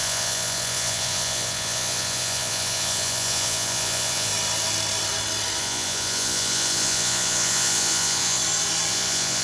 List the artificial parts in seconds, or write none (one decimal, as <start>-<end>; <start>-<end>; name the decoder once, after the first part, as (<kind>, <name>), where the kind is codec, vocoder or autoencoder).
0.0-4.3 (vocoder, Vocos); 5.6-8.4; 8.9-9.4